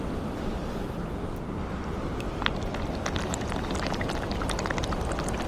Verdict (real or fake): fake